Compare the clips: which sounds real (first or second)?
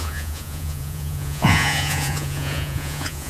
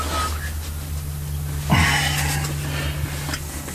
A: second